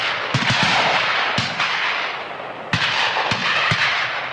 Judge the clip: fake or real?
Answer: real